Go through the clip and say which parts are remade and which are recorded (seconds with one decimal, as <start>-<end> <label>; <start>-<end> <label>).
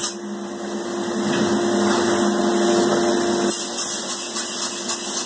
0.0-5.3 recorded